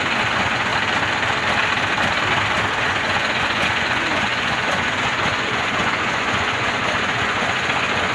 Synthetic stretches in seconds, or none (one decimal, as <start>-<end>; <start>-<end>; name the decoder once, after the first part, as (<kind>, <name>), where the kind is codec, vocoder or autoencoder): 0.0-0.7 (vocoder, Vocos); 2.8-8.1